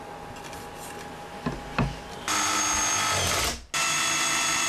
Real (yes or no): yes